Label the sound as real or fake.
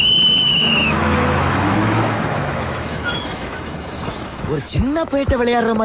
fake